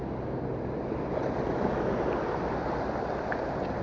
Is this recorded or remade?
recorded